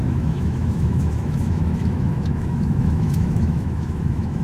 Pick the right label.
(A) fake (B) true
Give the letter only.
A